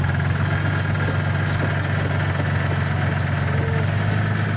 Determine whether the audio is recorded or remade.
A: recorded